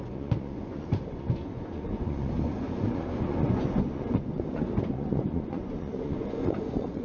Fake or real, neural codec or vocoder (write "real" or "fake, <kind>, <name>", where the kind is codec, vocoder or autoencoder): fake, vocoder, Vocos